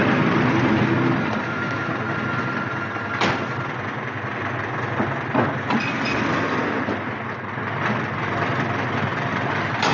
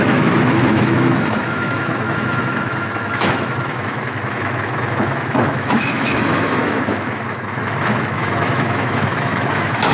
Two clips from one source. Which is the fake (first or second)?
second